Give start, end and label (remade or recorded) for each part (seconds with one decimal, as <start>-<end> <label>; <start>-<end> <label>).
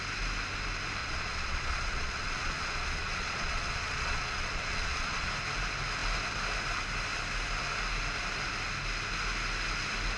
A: 0.0-1.0 recorded; 1.0-5.3 remade; 5.3-10.2 recorded